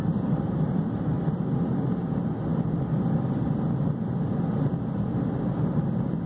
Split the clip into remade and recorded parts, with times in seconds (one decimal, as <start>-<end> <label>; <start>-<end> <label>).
0.0-6.3 recorded